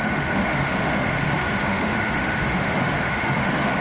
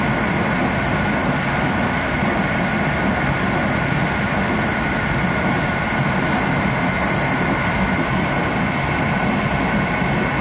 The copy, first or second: first